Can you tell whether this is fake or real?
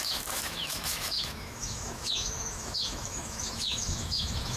fake